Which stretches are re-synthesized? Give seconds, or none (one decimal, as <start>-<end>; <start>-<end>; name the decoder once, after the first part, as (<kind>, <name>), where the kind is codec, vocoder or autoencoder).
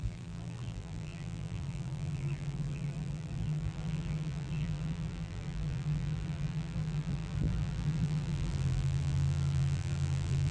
0.0-10.5 (vocoder, BigVGAN v2)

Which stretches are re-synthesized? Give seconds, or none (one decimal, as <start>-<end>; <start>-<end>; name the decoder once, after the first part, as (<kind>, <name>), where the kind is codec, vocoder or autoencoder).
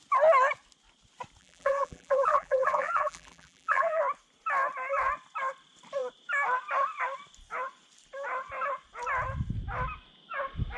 1.4-4.0 (vocoder, BigVGAN v2)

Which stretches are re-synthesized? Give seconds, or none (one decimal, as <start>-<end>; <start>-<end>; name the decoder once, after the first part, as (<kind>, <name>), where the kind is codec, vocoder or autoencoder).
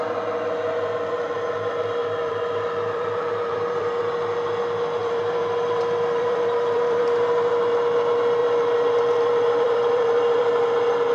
2.0-4.0 (vocoder, BigVGAN v2); 5.0-7.5; 8.4-10.7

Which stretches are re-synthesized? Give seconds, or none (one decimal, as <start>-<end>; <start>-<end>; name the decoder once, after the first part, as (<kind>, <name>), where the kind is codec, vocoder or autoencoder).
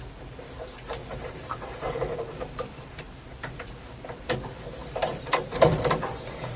1.0-4.3 (vocoder, BigVGAN v2); 4.8-6.6